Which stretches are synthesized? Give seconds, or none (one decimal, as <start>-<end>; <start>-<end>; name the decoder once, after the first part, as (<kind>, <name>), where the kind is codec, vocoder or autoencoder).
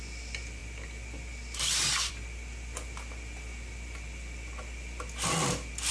none